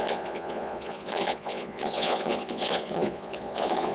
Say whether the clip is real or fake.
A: fake